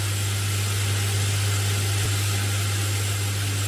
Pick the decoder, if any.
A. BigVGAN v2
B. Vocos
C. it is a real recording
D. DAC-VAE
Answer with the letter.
C